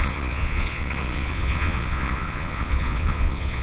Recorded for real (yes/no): no